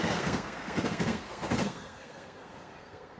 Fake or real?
fake